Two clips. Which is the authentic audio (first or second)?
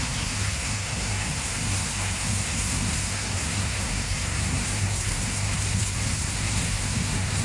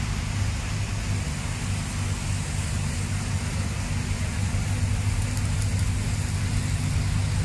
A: second